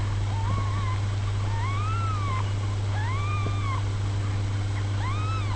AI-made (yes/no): no